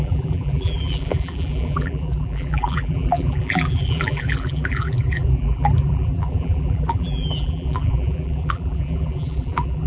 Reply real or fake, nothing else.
fake